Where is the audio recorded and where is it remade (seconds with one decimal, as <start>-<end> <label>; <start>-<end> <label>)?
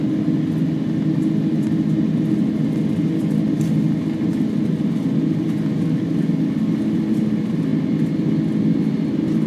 0.0-9.5 recorded